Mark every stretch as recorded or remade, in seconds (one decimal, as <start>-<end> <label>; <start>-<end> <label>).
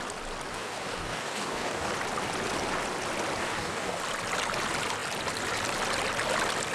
0.0-0.5 recorded; 0.5-1.9 remade; 1.9-3.4 recorded; 3.4-4.0 remade; 4.0-6.7 recorded